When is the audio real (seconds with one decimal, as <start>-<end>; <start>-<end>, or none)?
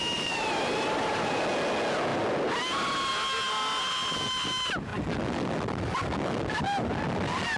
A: 1.4-7.6